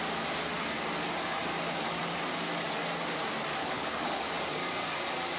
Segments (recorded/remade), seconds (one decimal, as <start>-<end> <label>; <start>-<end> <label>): 0.0-3.6 recorded; 3.6-4.3 remade; 4.3-5.4 recorded